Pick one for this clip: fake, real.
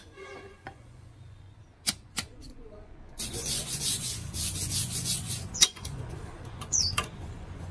fake